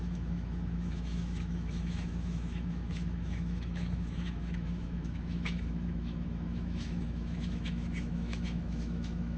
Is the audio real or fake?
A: fake